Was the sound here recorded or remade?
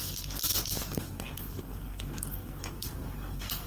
remade